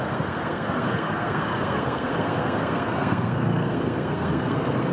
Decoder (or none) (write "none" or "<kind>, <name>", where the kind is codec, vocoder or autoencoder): codec, SNAC